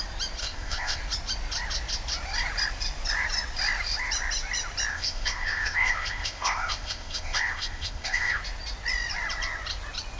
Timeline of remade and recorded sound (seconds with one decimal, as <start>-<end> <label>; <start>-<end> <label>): 0.0-0.4 recorded; 0.4-1.0 remade; 1.0-4.9 recorded; 4.9-8.4 remade; 8.4-10.2 recorded